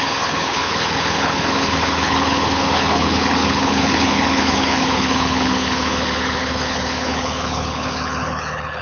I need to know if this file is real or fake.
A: fake